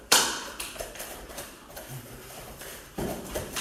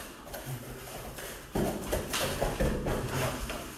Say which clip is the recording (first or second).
second